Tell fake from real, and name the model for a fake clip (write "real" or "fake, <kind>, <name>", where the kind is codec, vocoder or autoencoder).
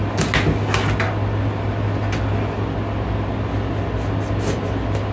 real